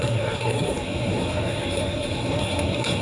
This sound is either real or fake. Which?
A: fake